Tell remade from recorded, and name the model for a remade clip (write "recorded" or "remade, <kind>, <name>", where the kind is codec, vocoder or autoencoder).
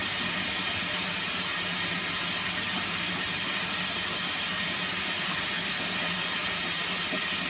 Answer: recorded